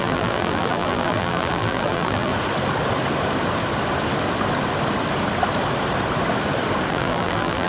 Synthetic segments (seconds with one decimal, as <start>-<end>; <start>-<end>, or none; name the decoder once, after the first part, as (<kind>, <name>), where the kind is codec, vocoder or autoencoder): 0.0-2.3 (vocoder, BigVGAN v2); 6.9-7.7